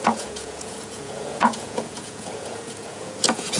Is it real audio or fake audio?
fake